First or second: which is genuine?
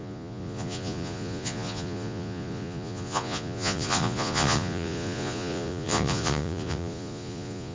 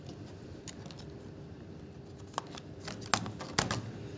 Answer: second